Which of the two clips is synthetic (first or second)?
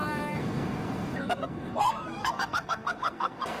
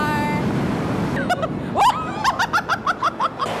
first